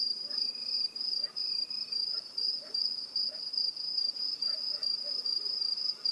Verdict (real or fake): fake